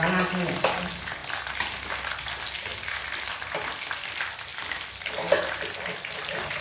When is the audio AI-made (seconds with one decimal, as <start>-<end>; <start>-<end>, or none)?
none